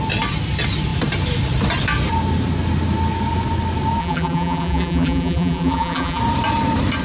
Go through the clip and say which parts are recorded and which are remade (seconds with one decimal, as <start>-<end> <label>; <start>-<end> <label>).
0.0-4.0 recorded; 4.0-6.2 remade; 6.2-7.0 recorded